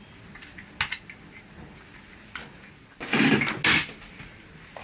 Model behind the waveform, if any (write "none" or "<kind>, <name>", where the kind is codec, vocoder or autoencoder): none